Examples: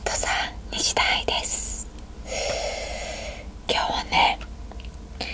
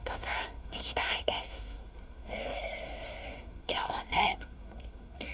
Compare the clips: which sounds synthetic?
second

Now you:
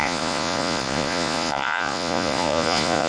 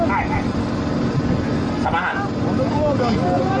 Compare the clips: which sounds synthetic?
first